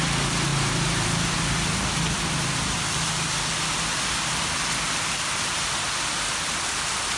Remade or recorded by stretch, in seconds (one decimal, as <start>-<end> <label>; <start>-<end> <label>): 0.0-7.2 recorded